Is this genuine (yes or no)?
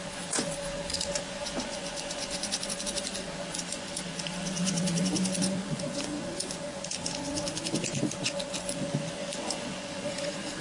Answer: no